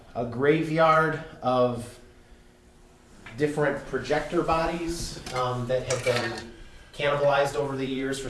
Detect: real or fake fake